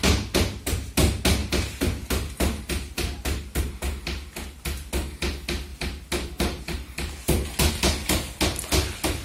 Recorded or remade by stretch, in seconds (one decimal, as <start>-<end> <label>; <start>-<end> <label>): 0.0-5.7 recorded; 5.7-7.7 remade; 7.7-9.2 recorded